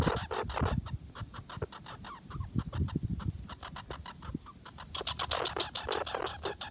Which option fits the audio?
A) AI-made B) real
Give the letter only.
B